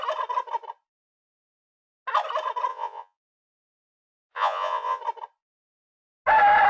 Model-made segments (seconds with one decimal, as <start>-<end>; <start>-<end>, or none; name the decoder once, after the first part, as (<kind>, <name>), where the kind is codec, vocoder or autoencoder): 2.7-3.7 (vocoder, Vocos); 4.3-5.0